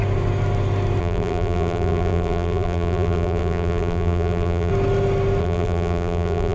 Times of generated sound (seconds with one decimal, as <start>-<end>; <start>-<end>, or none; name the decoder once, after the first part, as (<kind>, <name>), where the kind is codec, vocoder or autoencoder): 1.0-4.7 (vocoder, BigVGAN v2); 5.4-6.5